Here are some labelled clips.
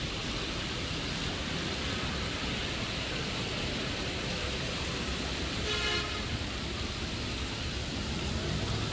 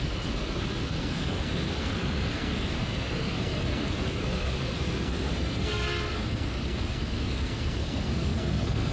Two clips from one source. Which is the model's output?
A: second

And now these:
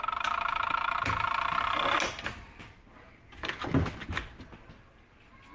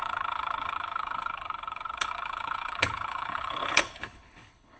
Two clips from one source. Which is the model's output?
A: second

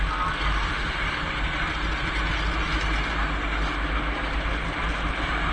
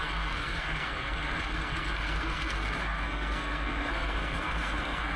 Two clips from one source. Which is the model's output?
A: second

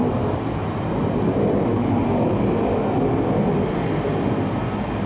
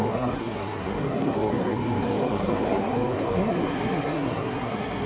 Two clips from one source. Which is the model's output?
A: second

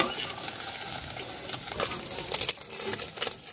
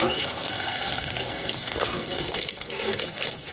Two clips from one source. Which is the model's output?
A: second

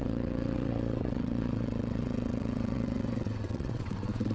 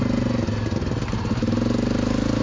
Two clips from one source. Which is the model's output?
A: first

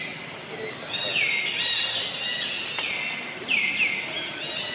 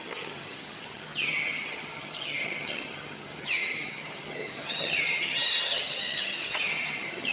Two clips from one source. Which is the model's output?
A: second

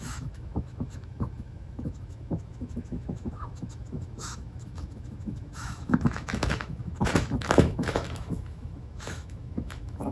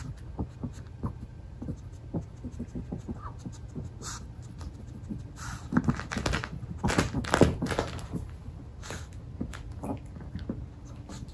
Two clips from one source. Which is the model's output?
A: first